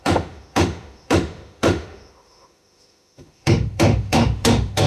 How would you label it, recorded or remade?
remade